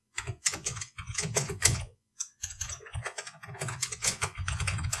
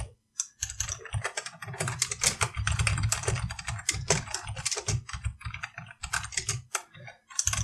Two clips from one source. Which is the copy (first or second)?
first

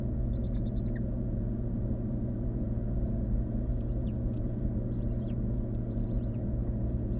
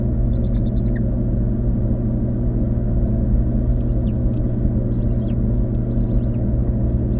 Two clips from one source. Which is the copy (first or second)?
first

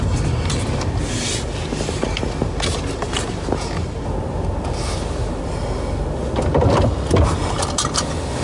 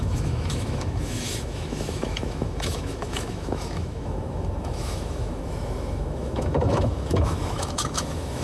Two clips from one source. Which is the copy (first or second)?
second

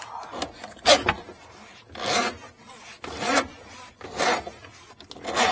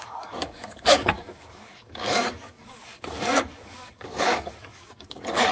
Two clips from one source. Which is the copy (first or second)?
second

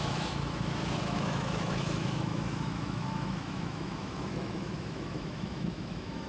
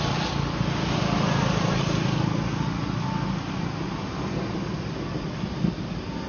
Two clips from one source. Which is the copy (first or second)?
first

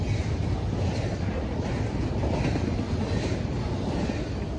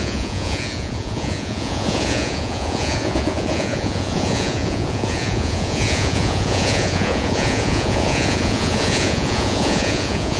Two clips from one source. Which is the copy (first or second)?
second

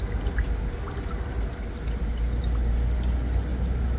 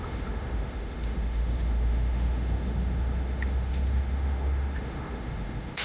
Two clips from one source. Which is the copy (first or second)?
second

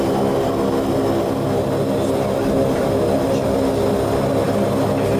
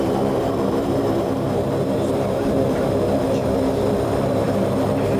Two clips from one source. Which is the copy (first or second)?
second